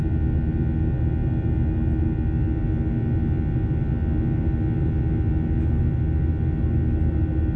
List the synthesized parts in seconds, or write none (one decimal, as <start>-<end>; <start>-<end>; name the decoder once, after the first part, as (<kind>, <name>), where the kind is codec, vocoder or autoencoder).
none